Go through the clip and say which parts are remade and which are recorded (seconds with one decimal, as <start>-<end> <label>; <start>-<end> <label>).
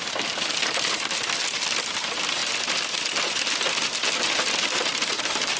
0.0-5.6 recorded